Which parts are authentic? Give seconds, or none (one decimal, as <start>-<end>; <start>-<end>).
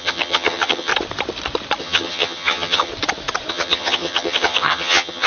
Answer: 0.9-1.8; 2.9-3.5